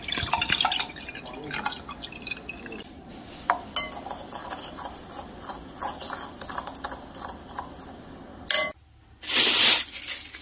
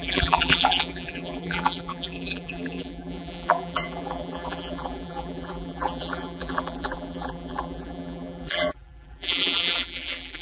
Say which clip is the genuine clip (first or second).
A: first